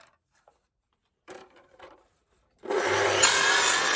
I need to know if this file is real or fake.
fake